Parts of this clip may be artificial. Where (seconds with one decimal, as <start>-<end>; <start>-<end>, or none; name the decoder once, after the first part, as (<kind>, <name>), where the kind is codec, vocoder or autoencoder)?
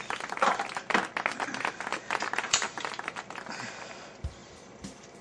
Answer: 1.9-3.2 (vocoder, BigVGAN v2); 4.4-5.2